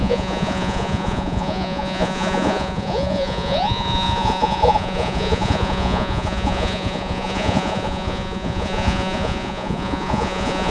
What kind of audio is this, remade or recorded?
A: remade